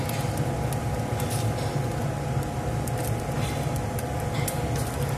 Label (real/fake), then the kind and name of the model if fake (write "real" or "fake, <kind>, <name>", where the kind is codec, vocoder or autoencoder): real